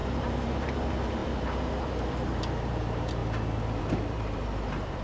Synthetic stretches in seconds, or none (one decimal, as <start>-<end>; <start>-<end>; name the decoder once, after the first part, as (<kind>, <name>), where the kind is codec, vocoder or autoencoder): 0.0-3.2 (vocoder, BigVGAN v2); 3.8-5.0